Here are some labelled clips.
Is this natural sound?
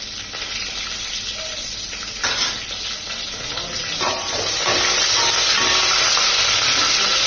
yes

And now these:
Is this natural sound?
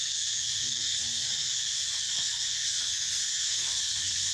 no